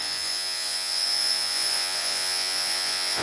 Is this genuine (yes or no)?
no